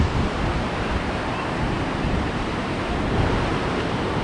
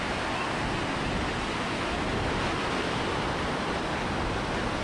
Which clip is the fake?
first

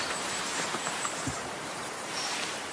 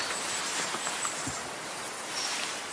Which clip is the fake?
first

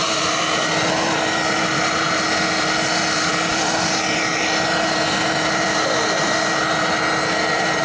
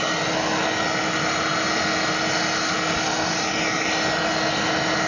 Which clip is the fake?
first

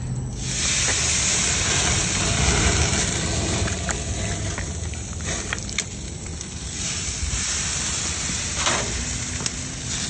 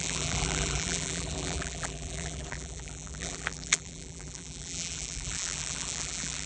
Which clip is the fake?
second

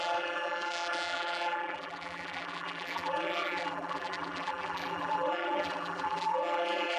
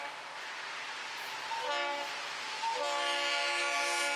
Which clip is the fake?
first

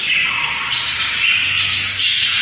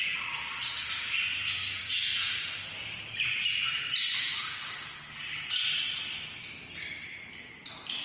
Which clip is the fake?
second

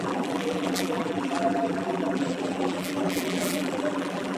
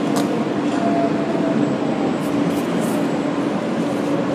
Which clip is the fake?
first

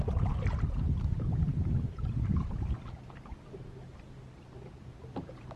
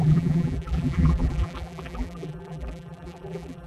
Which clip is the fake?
second